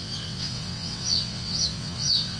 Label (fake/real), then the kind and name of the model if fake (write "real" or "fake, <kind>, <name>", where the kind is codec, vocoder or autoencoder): fake, vocoder, WaveNeXt